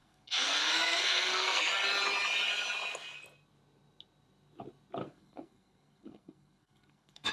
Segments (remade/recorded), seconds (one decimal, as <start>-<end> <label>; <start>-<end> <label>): 0.0-1.7 remade; 1.7-5.0 recorded; 5.0-7.3 remade